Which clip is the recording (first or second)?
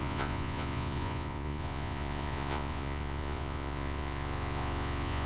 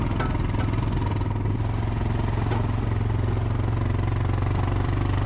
second